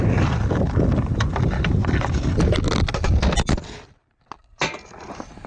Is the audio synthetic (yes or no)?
no